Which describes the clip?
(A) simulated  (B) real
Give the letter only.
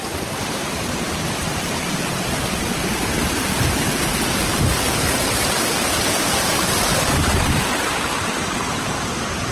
A